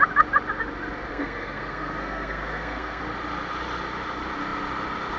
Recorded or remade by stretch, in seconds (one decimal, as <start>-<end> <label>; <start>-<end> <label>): 0.0-1.1 recorded; 1.1-3.0 remade; 3.0-5.2 recorded